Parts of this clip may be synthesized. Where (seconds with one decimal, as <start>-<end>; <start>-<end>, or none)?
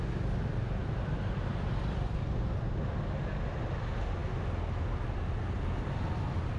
1.5-2.2